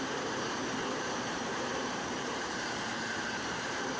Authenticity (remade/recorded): remade